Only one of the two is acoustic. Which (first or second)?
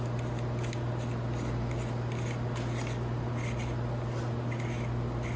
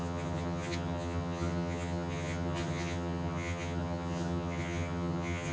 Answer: first